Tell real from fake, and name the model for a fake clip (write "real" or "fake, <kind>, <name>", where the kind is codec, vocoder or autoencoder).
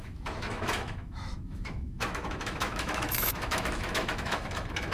fake, autoencoder, DAC-VAE